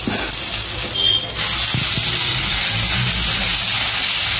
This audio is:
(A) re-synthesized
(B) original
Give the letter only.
B